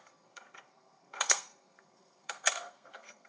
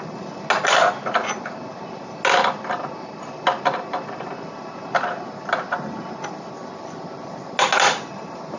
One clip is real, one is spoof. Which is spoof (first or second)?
first